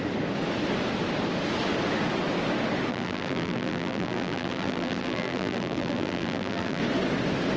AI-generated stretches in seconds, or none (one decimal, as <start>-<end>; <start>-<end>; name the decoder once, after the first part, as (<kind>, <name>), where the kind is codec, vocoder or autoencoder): 2.9-6.8 (vocoder, BigVGAN v2)